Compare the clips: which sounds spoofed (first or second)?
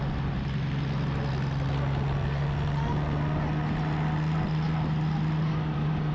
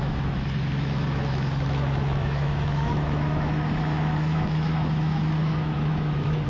second